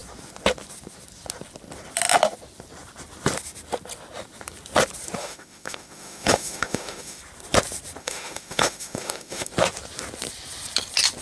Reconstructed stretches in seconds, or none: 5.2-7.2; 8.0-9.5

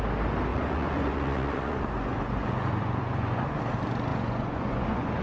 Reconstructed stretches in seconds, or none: 0.5-3.6; 4.1-5.2

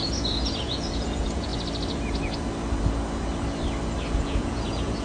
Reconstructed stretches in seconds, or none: 0.0-1.5; 4.2-5.0

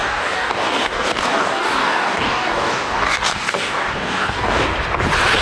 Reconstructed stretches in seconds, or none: 0.0-4.7

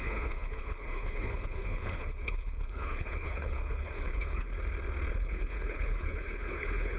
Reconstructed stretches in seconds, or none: 0.0-4.5; 5.1-7.0

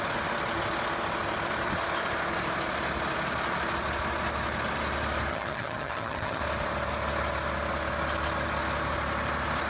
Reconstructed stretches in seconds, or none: 5.3-6.4